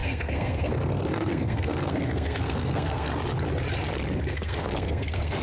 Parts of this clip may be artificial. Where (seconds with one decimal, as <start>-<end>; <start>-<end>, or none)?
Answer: 0.0-3.1; 4.3-5.4